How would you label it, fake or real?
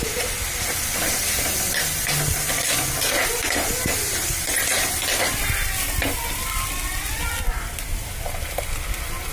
real